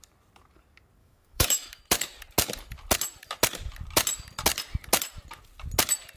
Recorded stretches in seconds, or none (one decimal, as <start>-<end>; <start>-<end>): 0.0-1.0; 1.8-6.2